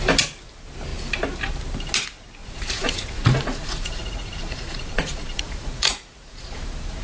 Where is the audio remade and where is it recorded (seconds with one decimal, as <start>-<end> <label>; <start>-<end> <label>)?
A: 0.0-2.4 recorded; 2.4-6.6 remade; 6.6-7.0 recorded